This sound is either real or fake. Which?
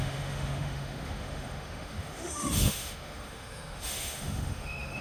fake